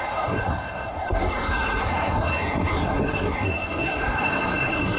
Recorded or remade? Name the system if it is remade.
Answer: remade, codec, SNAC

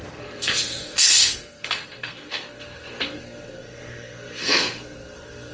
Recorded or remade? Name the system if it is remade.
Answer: remade, codec, SNAC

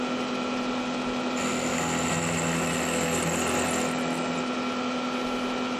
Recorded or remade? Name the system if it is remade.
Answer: recorded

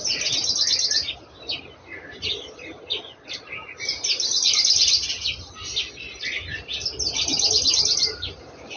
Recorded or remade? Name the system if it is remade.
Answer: recorded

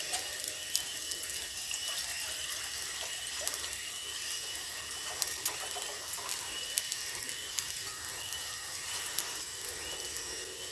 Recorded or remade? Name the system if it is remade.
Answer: recorded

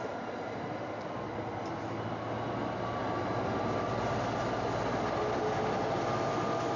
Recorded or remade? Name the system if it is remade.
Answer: recorded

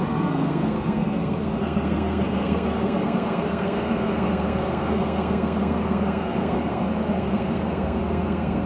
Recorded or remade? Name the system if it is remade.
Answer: remade, codec, SNAC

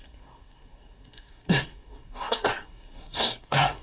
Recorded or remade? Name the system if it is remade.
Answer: remade, codec, SNAC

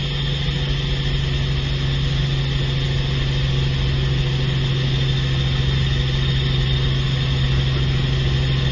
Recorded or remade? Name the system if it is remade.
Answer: recorded